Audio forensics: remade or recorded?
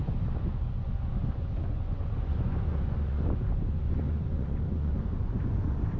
remade